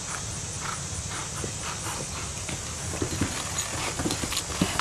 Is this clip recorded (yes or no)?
yes